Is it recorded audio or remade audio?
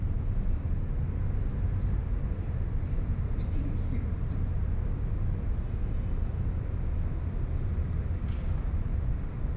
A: recorded